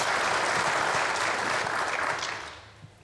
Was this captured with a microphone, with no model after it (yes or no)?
yes